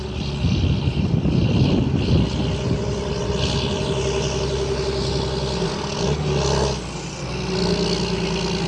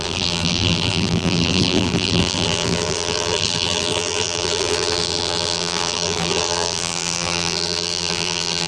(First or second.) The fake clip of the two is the second